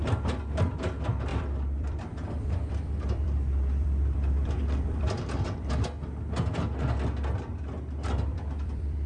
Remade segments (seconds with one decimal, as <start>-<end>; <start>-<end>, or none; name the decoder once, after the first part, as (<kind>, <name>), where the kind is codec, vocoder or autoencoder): 1.3-5.7 (vocoder, BigVGAN v2); 8.3-9.1